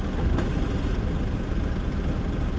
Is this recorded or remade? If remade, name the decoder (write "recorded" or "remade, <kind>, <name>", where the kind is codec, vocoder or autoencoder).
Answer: recorded